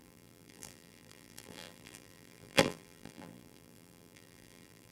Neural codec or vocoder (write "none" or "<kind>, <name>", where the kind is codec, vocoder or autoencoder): vocoder, BigVGAN v2